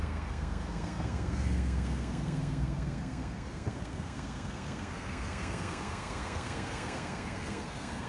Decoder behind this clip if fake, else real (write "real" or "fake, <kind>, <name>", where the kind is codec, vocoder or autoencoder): fake, codec, SNAC